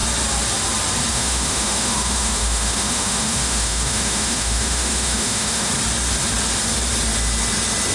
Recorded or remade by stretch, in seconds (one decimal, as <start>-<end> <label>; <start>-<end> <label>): 0.0-1.1 recorded; 1.1-5.7 remade; 5.7-7.9 recorded